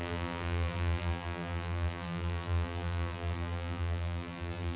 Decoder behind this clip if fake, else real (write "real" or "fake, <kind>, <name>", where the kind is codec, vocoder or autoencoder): fake, vocoder, BigVGAN v2